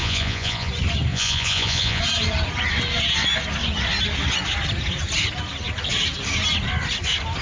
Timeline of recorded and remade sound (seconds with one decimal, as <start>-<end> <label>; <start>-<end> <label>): 0.0-0.7 remade; 0.7-1.1 recorded; 1.1-2.0 remade; 2.0-7.4 recorded